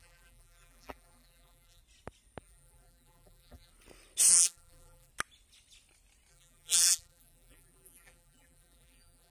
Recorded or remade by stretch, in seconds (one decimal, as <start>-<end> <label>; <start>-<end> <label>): 0.0-1.8 remade; 1.8-2.4 recorded; 2.4-3.7 remade; 3.7-4.3 recorded; 4.3-5.1 remade; 5.1-6.3 recorded; 6.3-9.3 remade